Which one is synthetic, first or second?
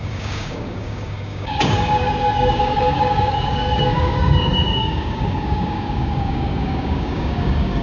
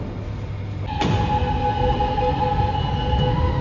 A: first